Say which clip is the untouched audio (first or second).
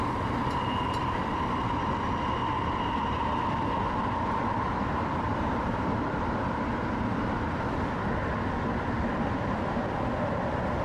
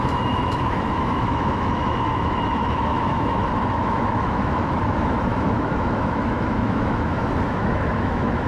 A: first